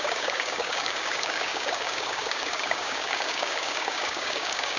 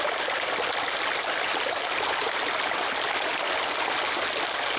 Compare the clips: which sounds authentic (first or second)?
second